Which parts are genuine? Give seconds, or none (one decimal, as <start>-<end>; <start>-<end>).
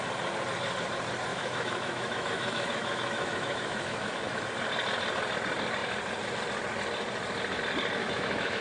0.0-1.3; 4.4-8.0